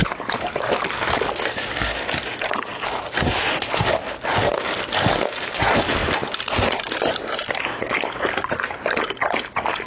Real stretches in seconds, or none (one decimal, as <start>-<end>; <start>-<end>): 0.8-9.9